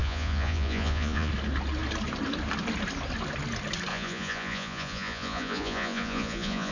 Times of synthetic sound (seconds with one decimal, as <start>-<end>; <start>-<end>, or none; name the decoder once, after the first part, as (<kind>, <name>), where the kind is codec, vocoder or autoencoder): 0.0-1.3 (vocoder, Vocos); 3.9-6.7